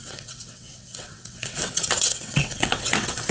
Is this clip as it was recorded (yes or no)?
no